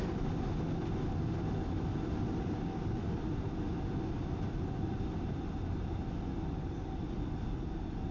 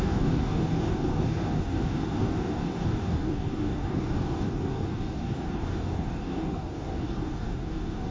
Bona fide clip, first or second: first